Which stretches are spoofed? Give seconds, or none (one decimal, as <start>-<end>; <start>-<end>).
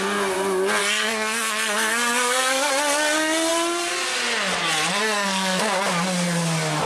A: 0.8-2.7; 5.0-5.6